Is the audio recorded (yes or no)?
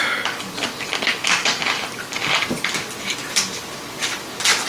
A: yes